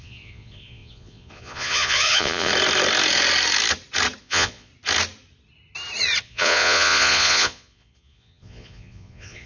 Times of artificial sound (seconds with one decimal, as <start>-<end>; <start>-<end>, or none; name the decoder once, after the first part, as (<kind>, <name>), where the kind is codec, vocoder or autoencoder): 0.0-2.5 (vocoder, Vocos); 4.2-4.7; 6.2-9.5